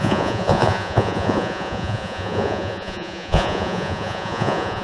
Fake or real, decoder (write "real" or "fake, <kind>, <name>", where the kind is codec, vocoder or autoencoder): fake, vocoder, Vocos